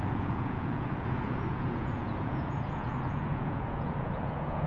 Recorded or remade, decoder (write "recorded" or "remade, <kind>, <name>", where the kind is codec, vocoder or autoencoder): remade, vocoder, Vocos